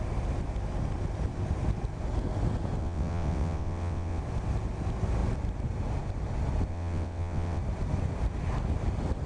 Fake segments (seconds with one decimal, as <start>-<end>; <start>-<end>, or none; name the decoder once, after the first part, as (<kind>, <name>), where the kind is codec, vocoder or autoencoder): 2.8-4.2 (vocoder, WaveNeXt); 6.7-7.6